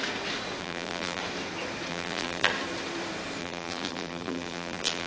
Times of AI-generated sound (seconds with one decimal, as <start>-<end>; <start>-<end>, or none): 0.6-1.2; 1.9-2.5; 3.4-5.1